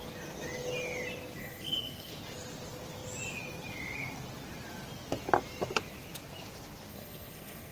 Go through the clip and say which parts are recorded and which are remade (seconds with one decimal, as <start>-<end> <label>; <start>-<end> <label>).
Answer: 0.0-1.4 recorded; 1.4-2.1 remade; 2.1-6.9 recorded; 6.9-7.7 remade